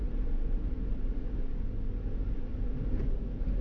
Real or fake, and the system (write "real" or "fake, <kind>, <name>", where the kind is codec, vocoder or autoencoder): real